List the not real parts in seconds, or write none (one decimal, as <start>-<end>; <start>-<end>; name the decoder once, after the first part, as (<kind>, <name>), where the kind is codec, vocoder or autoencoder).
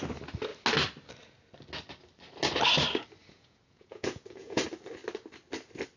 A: 3.2-4.6 (vocoder, Vocos)